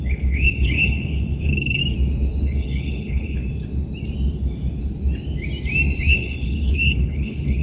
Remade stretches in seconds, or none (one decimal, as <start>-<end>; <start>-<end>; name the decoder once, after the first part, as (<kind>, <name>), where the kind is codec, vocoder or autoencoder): 0.0-1.8 (codec, HILCodec); 2.4-3.4; 6.0-7.6